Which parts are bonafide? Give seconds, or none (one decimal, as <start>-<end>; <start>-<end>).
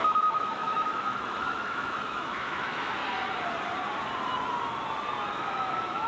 3.0-5.3